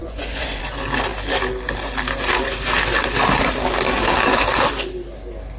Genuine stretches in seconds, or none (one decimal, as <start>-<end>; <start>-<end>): 0.6-5.6